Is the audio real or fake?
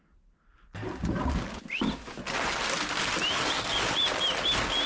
real